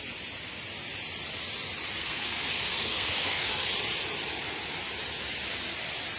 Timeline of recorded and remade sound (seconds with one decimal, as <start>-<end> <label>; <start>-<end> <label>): 0.0-2.0 recorded; 2.0-3.7 remade; 3.7-6.2 recorded